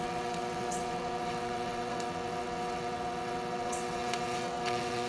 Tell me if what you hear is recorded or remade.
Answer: remade